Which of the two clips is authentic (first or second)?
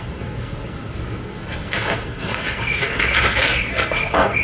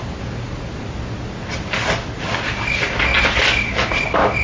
second